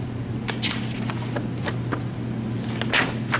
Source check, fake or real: real